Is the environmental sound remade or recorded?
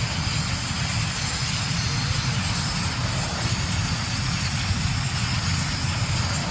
recorded